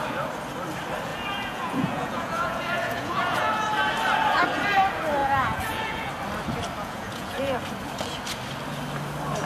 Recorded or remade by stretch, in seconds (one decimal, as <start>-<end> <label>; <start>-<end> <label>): 0.0-1.1 recorded; 1.1-3.5 remade; 3.5-5.2 recorded; 5.2-6.1 remade; 6.1-6.8 recorded; 6.8-7.6 remade; 7.6-9.5 recorded